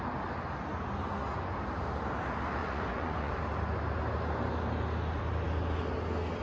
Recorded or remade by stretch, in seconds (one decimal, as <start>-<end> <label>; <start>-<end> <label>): 0.0-2.6 recorded; 2.6-3.3 remade; 3.3-6.4 recorded